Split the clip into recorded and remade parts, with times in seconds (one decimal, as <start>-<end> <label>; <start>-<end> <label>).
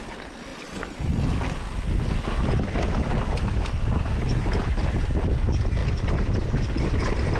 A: 0.0-7.4 recorded